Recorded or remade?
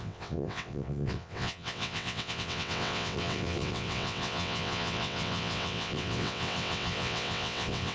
remade